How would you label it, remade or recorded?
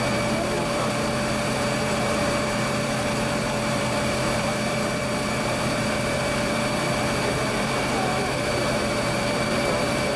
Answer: remade